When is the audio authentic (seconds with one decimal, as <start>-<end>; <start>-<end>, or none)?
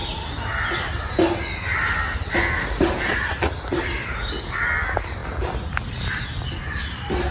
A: 0.0-4.4; 5.2-6.6